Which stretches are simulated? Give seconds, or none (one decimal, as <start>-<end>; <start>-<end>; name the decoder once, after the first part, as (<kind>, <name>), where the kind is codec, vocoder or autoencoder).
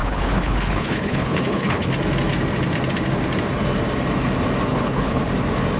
0.0-1.9 (codec, HILCodec); 4.7-5.2